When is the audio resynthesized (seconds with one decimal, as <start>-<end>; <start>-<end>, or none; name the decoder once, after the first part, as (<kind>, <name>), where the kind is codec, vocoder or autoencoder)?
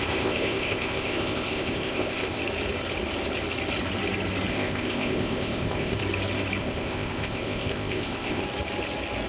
0.0-2.4 (codec, ZipCodec); 4.5-6.0; 6.6-8.4